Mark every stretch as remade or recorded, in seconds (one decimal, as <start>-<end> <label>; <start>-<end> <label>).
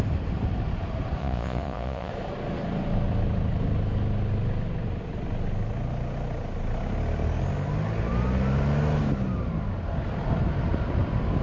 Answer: 0.0-1.2 recorded; 1.2-2.1 remade; 2.1-11.4 recorded